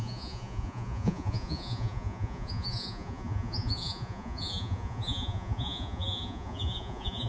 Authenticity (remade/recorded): remade